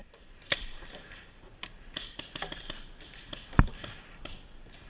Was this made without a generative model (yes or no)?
no